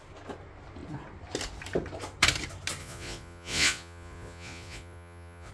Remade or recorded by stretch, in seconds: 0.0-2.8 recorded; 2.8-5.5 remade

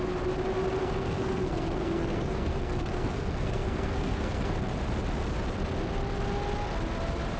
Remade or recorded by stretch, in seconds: 0.0-0.8 recorded; 0.8-4.5 remade; 4.5-7.4 recorded

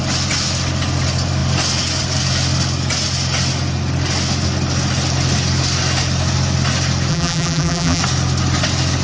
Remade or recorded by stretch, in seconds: 0.0-7.1 recorded; 7.1-8.0 remade; 8.0-9.0 recorded